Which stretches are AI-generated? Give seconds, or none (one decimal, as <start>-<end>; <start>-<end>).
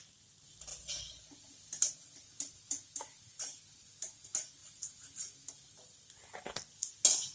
0.7-3.4